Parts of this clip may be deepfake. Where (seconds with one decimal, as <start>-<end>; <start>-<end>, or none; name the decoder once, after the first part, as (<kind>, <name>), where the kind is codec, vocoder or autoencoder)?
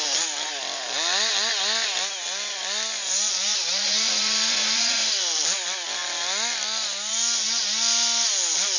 3.5-5.1 (vocoder, Vocos)